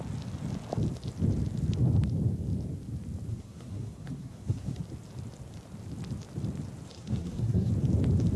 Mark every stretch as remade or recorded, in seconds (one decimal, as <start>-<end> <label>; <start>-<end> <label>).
0.0-3.3 recorded; 3.3-4.8 remade; 4.8-6.9 recorded; 6.9-7.7 remade; 7.7-8.4 recorded